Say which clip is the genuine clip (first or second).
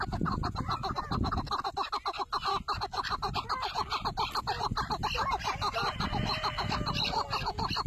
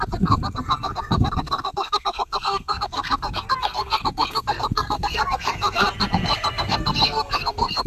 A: first